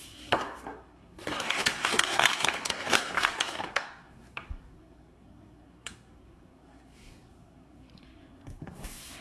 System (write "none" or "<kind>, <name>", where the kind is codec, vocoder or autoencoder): codec, SNAC